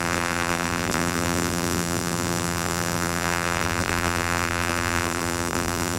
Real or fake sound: fake